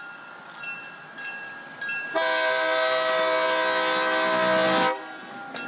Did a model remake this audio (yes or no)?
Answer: no